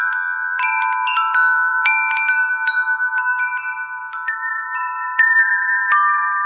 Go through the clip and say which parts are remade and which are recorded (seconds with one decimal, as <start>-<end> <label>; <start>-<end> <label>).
0.0-6.5 remade